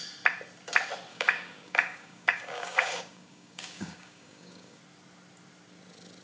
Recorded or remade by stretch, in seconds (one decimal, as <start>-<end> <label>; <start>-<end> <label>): 0.0-1.1 recorded; 1.1-4.8 remade; 4.8-6.2 recorded